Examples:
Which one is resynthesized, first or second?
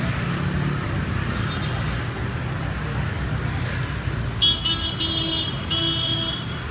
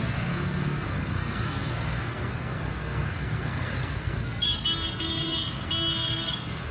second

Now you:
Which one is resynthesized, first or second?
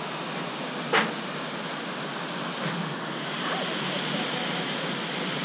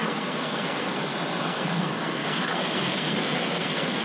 second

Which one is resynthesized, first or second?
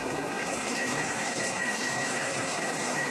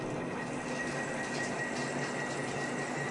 first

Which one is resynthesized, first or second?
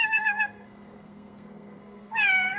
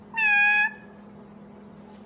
first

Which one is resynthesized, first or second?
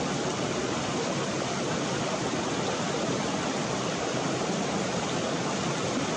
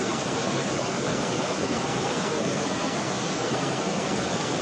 second